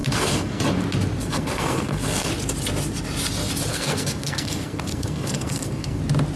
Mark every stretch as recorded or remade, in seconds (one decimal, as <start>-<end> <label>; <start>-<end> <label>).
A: 0.0-0.6 remade; 0.6-1.2 recorded; 1.2-2.3 remade; 2.3-3.7 recorded; 3.7-6.0 remade; 6.0-6.4 recorded